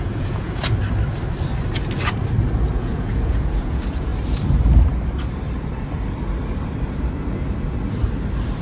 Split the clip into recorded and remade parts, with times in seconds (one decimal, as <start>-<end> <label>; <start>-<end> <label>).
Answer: 0.0-0.6 remade; 0.6-2.7 recorded; 2.7-4.1 remade; 4.1-8.6 recorded

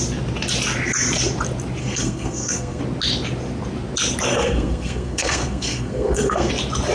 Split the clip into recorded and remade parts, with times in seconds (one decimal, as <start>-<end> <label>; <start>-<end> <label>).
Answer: 0.0-1.8 recorded; 1.8-2.8 remade; 2.8-4.3 recorded; 4.3-6.5 remade; 6.5-6.9 recorded

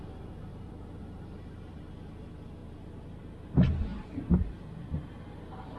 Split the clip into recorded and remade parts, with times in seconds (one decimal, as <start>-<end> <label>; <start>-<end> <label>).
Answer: 0.0-0.5 recorded; 0.5-1.9 remade; 1.9-5.8 recorded

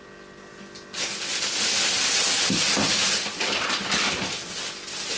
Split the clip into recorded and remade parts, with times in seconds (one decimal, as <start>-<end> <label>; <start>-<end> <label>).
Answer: 0.0-1.3 recorded; 1.3-4.3 remade; 4.3-5.2 recorded

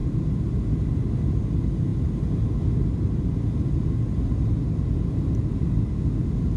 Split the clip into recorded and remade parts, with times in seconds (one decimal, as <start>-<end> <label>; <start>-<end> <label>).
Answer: 0.0-6.6 recorded

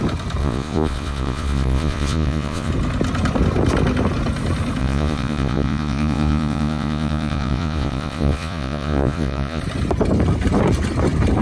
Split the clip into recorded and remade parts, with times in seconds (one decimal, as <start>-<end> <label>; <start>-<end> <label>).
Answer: 0.0-0.4 recorded; 0.4-2.7 remade; 2.7-4.8 recorded; 4.8-9.6 remade; 9.6-11.4 recorded

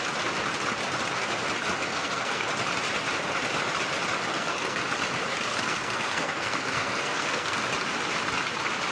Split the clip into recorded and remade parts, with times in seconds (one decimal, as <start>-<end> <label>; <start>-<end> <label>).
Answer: 0.0-1.9 recorded; 1.9-2.5 remade; 2.5-4.3 recorded; 4.3-4.8 remade; 4.8-5.5 recorded; 5.5-7.6 remade; 7.6-8.9 recorded